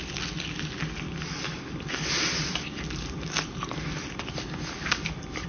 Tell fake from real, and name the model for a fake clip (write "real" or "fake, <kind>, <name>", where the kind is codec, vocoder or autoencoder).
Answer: fake, vocoder, BigVGAN v2